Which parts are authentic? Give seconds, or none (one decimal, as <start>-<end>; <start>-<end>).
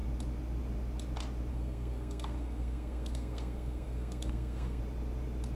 0.0-1.5; 4.8-5.5